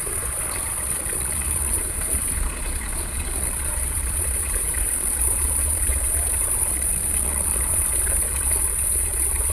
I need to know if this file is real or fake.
fake